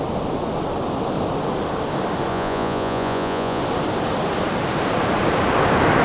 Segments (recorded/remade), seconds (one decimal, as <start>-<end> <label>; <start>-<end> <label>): 0.0-2.3 recorded; 2.3-3.6 remade; 3.6-6.0 recorded